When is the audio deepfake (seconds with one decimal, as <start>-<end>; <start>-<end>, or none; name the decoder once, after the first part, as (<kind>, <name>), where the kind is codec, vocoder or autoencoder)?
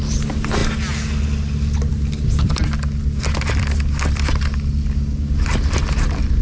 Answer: none